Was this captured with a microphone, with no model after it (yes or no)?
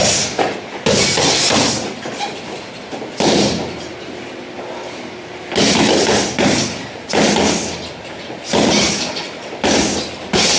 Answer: yes